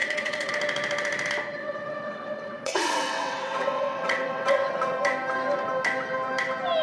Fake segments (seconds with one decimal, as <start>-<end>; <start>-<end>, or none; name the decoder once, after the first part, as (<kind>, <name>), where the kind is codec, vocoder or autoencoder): 0.0-0.5 (vocoder, WaveNeXt); 1.6-5.0